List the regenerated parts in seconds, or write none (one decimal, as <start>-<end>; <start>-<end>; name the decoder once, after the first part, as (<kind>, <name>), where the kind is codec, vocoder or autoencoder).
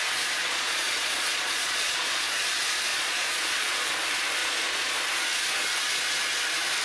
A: 0.4-2.2 (vocoder, Vocos); 2.9-3.9; 4.4-5.0